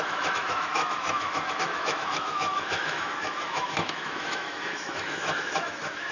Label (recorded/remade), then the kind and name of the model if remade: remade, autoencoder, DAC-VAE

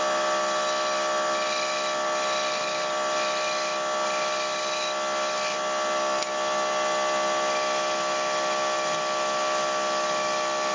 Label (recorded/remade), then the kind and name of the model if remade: recorded